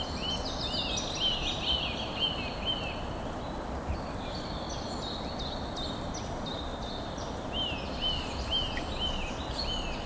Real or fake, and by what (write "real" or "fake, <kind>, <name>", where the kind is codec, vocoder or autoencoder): real